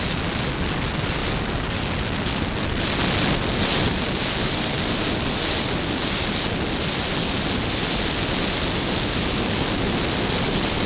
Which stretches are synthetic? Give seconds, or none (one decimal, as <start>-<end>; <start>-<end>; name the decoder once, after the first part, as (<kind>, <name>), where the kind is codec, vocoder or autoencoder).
none